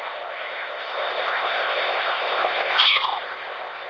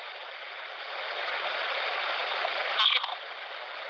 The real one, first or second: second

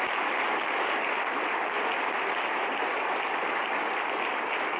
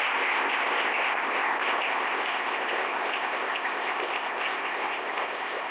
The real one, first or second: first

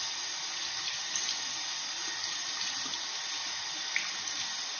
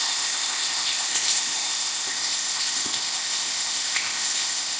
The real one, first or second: first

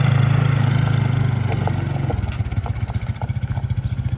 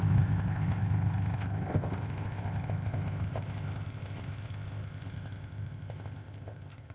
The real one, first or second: first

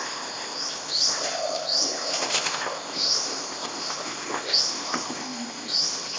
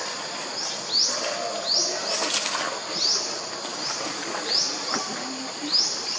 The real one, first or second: second